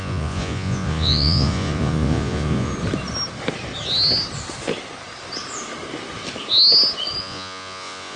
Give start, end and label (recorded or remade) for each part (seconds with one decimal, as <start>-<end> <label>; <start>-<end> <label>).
0.0-2.7 remade; 2.7-7.2 recorded; 7.2-8.2 remade